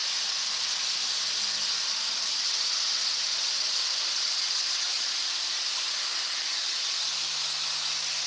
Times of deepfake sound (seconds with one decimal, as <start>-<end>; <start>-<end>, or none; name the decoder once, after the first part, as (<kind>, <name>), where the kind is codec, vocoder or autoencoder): none